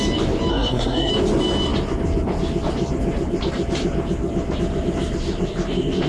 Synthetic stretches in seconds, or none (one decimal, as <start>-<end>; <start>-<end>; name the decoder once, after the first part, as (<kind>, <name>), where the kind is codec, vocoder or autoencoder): 0.5-1.1 (codec, SNAC)